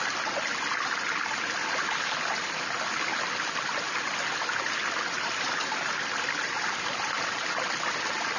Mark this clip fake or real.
real